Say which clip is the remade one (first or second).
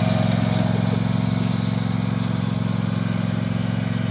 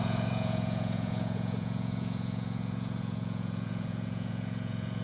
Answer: second